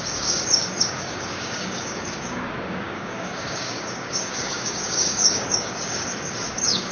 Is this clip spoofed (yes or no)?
yes